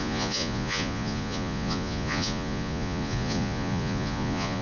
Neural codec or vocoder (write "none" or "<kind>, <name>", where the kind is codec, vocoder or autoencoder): vocoder, Vocos